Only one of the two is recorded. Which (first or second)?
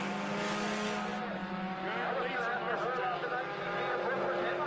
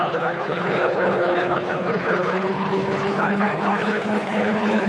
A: first